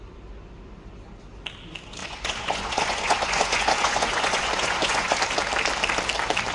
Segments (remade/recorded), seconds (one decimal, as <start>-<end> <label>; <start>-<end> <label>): 0.0-2.0 recorded; 2.0-5.2 remade; 5.2-6.5 recorded